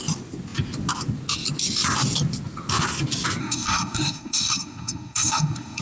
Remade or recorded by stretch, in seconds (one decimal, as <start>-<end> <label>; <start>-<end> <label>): 0.0-3.4 recorded; 3.4-5.8 remade